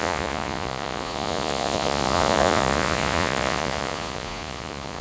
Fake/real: fake